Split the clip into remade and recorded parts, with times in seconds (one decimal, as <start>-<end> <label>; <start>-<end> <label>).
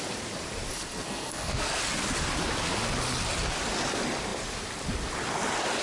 0.0-0.7 recorded; 0.7-1.8 remade; 1.8-5.8 recorded